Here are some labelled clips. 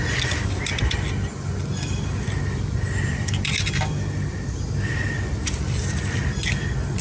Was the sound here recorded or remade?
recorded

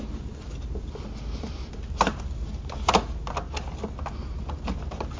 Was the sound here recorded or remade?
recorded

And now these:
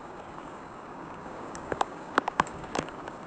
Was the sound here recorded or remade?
remade